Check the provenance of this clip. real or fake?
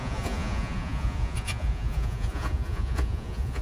fake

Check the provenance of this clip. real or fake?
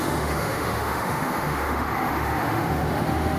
fake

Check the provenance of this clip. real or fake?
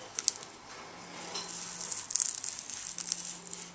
real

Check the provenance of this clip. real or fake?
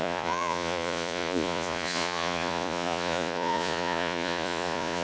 fake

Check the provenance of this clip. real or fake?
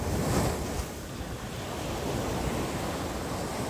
real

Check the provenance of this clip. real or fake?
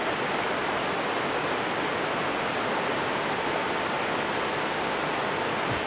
real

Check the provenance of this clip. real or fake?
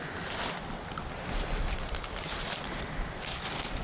real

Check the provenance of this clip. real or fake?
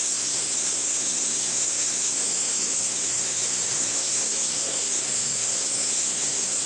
fake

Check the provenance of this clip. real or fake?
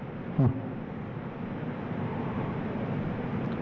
real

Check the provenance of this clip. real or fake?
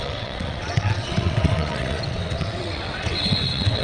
fake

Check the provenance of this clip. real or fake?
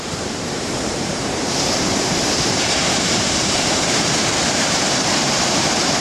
fake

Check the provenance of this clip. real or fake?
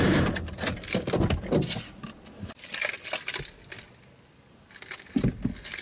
real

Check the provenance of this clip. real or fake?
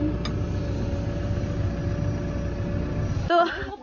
real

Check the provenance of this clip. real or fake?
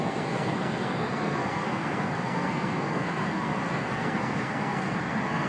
fake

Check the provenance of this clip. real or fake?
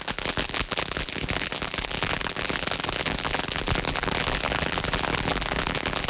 fake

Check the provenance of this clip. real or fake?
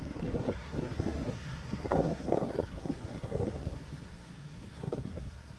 fake